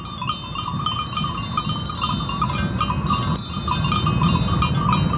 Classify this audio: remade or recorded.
recorded